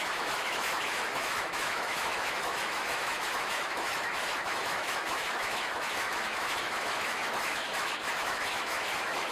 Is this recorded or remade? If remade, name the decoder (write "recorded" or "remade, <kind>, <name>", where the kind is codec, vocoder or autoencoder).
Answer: remade, autoencoder, DAC-VAE